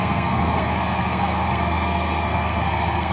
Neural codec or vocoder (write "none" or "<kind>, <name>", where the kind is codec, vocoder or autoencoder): codec, SNAC